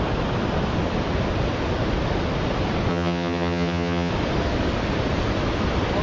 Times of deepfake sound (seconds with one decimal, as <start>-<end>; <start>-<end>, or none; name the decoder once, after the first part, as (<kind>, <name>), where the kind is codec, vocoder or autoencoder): 2.9-4.1 (vocoder, HiFi-GAN)